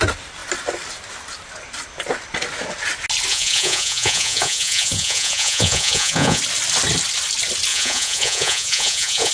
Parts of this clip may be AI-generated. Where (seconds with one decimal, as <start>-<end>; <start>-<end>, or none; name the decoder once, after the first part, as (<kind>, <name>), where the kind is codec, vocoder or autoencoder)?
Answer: 3.3-6.4 (vocoder, Vocos); 7.7-9.3